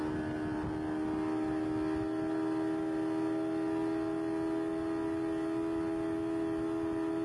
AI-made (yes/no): no